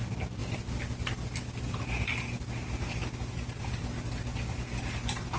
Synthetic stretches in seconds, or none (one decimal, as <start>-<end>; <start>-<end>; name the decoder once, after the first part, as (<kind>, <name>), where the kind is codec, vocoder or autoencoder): none